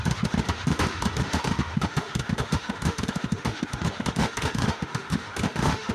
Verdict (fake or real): fake